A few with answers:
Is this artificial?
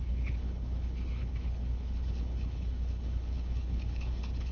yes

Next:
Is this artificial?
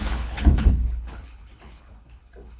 yes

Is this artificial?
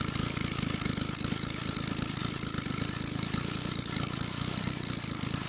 no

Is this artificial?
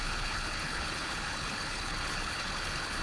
yes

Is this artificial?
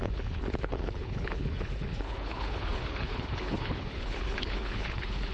yes